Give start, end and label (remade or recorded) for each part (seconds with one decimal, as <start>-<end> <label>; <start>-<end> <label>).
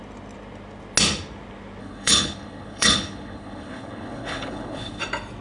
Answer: 0.0-1.8 recorded; 1.8-5.0 remade; 5.0-5.4 recorded